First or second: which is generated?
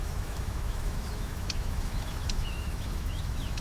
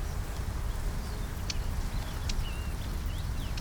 first